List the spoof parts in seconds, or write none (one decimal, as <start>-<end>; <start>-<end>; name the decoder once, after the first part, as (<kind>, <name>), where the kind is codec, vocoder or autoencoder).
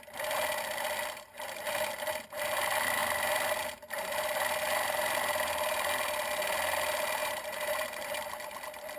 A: 7.2-8.1 (vocoder, BigVGAN v2)